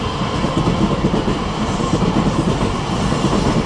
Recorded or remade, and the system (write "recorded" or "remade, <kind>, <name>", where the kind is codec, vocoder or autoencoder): recorded